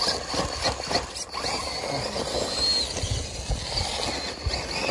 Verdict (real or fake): real